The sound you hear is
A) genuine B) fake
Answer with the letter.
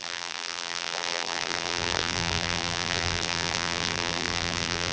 B